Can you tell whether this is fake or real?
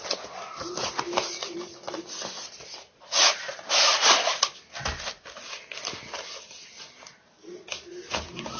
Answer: real